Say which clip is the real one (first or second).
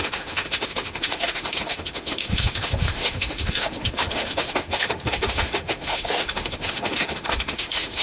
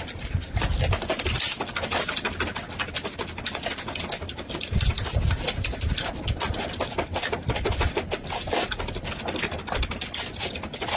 second